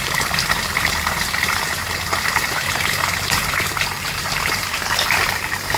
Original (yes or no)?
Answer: no